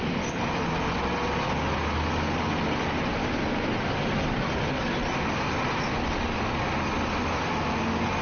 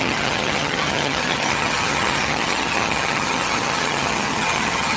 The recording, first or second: first